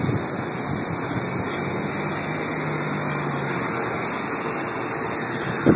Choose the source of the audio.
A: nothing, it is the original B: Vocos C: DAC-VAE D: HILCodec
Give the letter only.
A